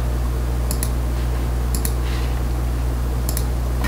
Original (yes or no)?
yes